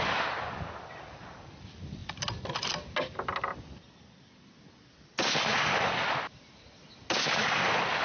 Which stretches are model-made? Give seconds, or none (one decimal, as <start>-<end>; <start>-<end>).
none